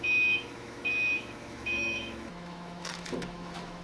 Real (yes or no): no